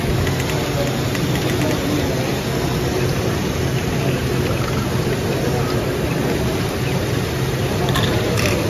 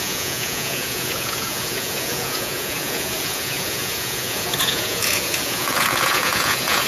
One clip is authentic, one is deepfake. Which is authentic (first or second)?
first